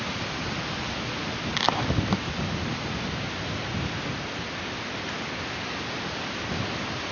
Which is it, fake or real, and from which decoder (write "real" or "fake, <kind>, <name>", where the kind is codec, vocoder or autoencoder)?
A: real